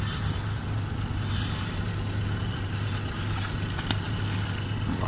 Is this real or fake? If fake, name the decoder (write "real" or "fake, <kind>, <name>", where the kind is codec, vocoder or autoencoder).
real